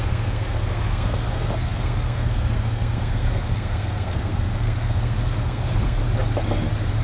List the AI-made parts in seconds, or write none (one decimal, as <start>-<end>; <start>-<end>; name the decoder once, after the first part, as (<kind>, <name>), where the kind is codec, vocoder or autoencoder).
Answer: 0.0-6.0 (codec, SNAC)